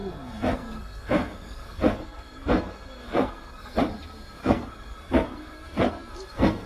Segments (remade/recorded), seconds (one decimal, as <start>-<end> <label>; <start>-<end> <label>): 0.0-3.8 remade; 3.8-4.4 recorded; 4.4-6.7 remade